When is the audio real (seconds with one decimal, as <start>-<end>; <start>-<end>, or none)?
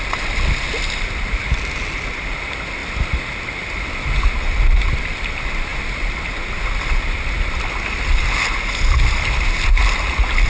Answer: 0.0-10.5